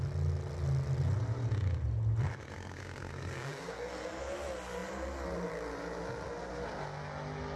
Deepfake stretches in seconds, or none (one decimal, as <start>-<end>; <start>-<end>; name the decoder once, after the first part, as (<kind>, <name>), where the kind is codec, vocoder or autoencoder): 2.3-4.2 (codec, SNAC)